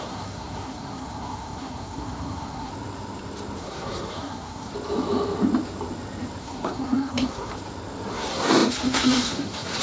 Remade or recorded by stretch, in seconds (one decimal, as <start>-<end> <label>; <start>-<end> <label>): 0.0-2.7 remade; 2.7-3.6 recorded; 3.6-4.7 remade; 4.7-6.4 recorded; 6.4-7.5 remade; 7.5-8.1 recorded; 8.1-9.8 remade